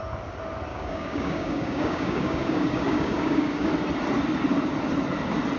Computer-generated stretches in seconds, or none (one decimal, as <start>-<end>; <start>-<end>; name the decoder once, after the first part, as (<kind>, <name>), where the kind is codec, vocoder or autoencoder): 0.7-3.7 (codec, DAC)